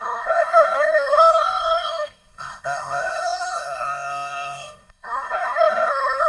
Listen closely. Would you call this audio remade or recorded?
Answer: remade